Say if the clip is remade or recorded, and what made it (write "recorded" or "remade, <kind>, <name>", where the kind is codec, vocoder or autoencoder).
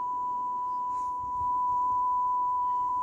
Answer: remade, vocoder, BigVGAN v2